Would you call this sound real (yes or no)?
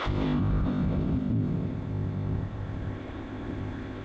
no